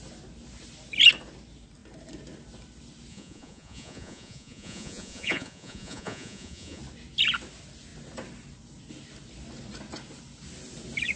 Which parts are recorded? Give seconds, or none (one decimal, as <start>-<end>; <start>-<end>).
0.0-3.1; 6.8-11.2